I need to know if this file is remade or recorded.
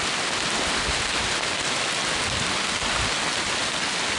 recorded